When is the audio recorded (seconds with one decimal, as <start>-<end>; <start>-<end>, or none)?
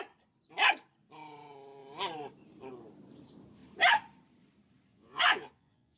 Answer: 0.0-4.9